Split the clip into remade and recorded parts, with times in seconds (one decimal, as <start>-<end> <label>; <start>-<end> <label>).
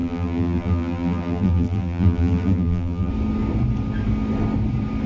0.0-3.1 remade; 3.1-5.1 recorded